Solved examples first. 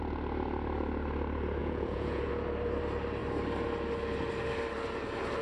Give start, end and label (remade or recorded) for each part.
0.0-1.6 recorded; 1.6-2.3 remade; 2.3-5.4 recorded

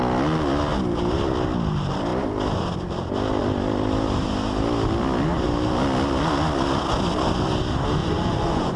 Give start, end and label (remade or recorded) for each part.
0.0-8.0 recorded; 8.0-8.8 remade